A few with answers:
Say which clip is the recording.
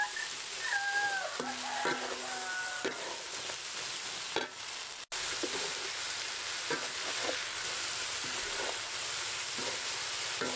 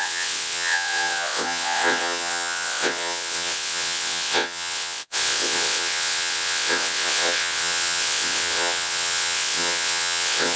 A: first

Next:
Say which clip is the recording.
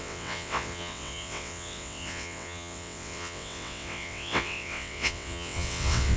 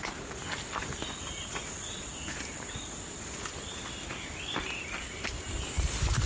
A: second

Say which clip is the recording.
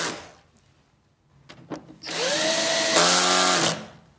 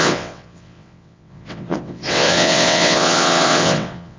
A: first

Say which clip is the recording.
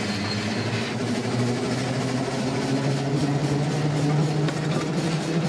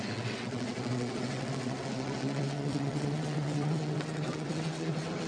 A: first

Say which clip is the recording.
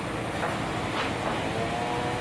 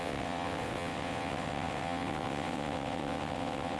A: first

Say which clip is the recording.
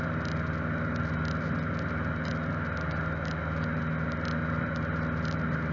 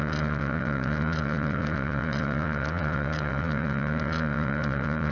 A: first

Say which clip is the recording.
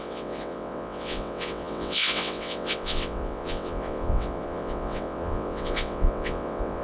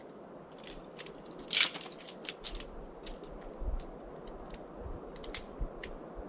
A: second